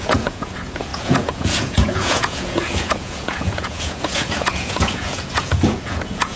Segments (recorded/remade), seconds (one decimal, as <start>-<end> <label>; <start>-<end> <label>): 0.0-6.4 remade